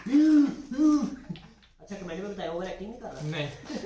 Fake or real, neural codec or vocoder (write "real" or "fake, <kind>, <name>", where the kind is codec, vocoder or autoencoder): real